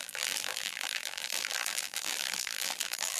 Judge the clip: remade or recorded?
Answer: remade